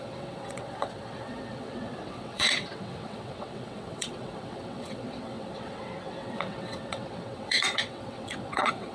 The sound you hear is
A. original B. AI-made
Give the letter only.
B